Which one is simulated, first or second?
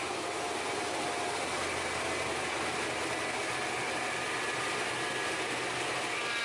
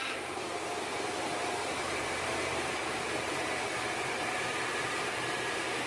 second